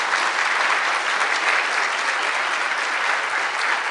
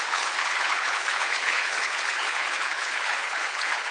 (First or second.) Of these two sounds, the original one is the first